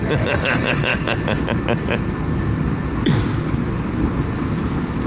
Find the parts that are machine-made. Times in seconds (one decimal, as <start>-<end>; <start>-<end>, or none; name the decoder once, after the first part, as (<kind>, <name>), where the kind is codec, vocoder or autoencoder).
none